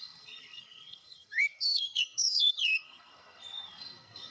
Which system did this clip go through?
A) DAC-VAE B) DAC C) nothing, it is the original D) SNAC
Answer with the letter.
D